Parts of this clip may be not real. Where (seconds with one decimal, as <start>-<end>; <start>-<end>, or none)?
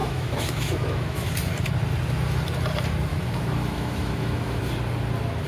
0.0-1.3; 3.1-4.6